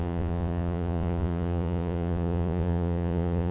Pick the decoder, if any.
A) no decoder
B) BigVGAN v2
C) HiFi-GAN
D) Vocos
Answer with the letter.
D